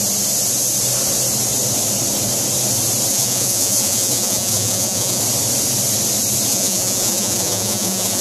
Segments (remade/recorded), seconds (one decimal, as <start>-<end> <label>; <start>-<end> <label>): 0.0-3.1 recorded; 3.1-5.2 remade; 5.2-6.5 recorded; 6.5-8.2 remade